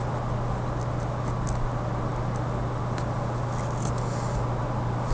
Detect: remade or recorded recorded